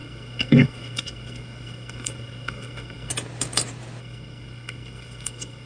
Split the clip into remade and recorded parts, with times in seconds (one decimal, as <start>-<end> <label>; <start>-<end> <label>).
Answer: 0.0-3.1 remade; 3.1-4.0 recorded; 4.0-5.7 remade